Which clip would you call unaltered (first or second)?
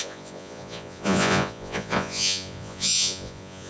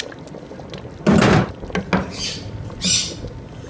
second